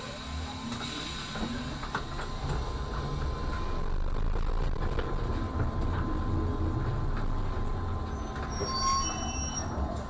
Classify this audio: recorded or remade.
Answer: recorded